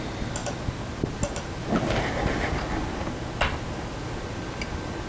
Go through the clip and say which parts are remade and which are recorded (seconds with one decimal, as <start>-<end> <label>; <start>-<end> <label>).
0.0-5.1 recorded